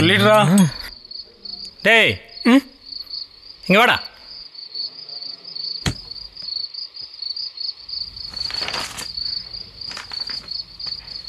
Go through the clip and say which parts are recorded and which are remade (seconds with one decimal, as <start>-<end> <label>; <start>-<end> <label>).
0.0-4.2 recorded; 4.2-5.9 remade; 5.9-11.3 recorded